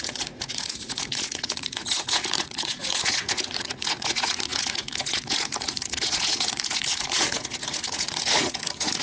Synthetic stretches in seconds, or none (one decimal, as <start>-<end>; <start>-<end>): 0.0-9.0